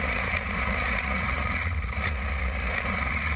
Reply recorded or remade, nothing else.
remade